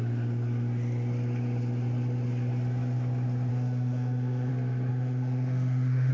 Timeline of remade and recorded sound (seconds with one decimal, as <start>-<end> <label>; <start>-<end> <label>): 0.0-3.5 recorded; 3.5-4.5 remade; 4.5-4.9 recorded; 4.9-6.1 remade